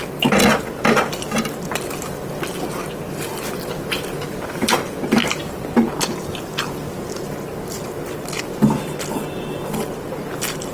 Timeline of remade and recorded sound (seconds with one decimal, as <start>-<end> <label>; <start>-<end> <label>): 0.0-5.2 recorded; 5.2-6.1 remade; 6.1-10.7 recorded